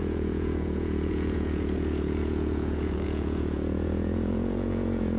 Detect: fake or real fake